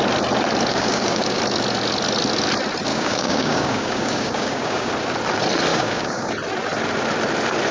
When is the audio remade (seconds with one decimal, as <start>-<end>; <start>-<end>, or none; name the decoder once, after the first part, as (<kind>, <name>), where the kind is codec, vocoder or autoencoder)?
0.7-1.4 (codec, DAC); 2.9-4.9; 5.7-6.3